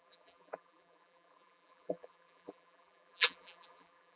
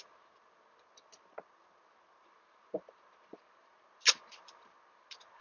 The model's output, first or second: first